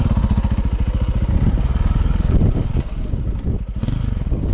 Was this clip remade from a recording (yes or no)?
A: no